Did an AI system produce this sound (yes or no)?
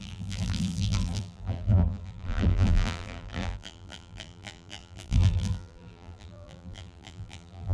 yes